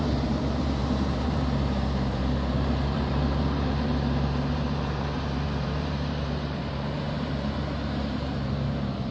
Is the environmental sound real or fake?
fake